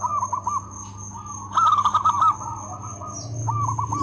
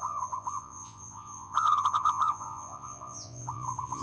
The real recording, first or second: first